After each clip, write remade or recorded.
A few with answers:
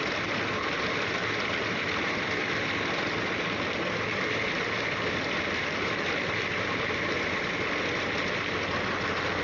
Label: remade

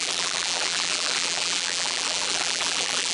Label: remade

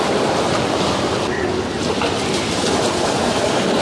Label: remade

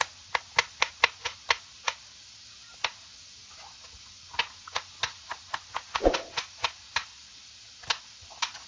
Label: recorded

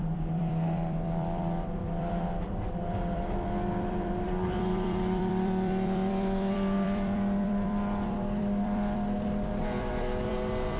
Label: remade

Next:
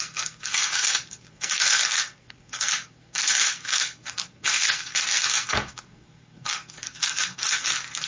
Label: remade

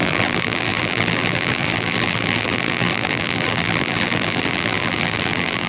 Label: remade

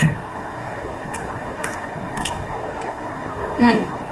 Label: remade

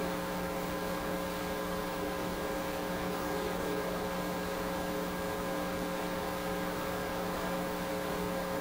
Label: remade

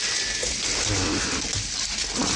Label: recorded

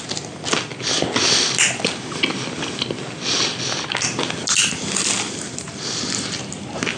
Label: recorded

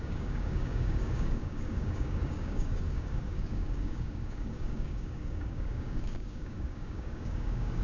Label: remade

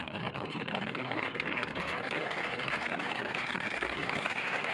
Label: remade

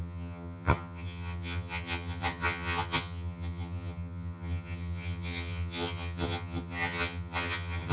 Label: remade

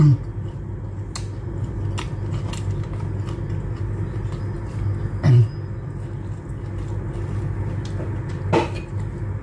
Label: recorded